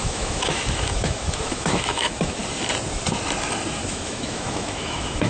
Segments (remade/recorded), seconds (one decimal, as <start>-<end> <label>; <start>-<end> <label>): 0.0-2.4 remade; 2.4-3.9 recorded; 3.9-5.3 remade